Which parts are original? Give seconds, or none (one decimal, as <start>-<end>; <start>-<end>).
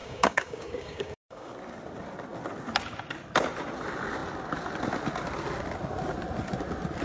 1.5-7.0